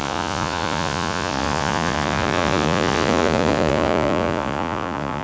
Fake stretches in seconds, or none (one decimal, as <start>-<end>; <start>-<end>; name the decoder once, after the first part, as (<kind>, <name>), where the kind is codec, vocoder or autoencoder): 0.0-5.2 (vocoder, Vocos)